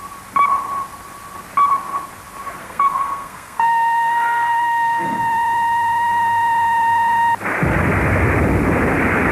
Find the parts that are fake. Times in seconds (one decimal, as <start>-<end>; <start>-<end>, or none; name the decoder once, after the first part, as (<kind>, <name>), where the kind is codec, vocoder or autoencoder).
2.6-5.2 (codec, SNAC)